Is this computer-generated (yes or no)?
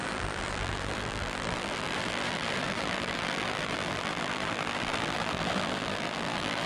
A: yes